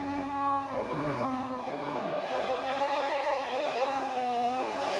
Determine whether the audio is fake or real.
fake